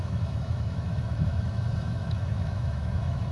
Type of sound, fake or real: fake